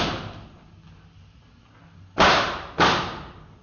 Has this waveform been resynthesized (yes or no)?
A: no